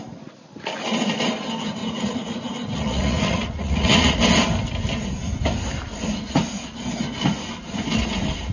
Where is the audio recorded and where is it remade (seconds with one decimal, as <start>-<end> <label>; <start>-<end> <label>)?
0.0-1.8 recorded; 1.8-4.2 remade; 4.2-8.5 recorded